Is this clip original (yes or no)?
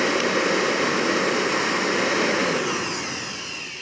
yes